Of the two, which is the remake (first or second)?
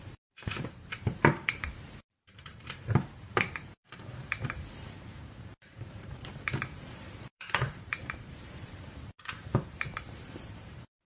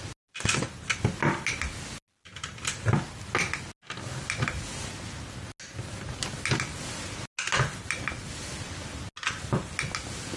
first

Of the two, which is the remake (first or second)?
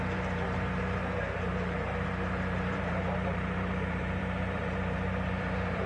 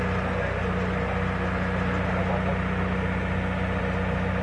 first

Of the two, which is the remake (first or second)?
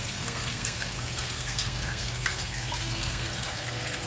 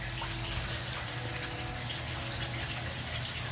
first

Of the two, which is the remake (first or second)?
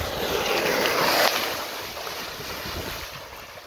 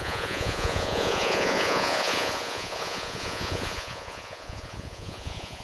second